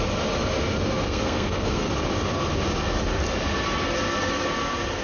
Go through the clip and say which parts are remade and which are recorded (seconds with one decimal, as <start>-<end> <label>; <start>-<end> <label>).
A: 0.0-1.0 recorded; 1.0-1.9 remade; 1.9-5.0 recorded